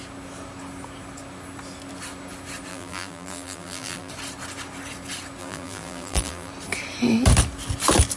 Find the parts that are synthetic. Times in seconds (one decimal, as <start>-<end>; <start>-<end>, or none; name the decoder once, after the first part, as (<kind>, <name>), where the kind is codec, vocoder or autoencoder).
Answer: 2.7-4.1 (vocoder, BigVGAN v2); 5.4-6.5